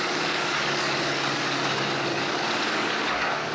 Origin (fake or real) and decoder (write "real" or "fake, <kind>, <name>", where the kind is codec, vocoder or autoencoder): fake, codec, DAC